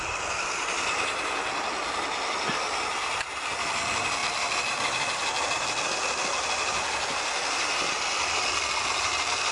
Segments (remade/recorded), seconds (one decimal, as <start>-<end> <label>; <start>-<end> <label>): 0.0-9.5 recorded